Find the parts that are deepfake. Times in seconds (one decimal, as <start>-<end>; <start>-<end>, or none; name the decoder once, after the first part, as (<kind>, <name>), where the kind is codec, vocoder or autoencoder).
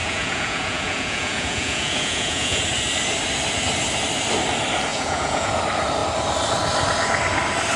0.0-2.6 (vocoder, Vocos); 4.9-5.5